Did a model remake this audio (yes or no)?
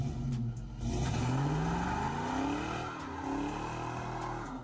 no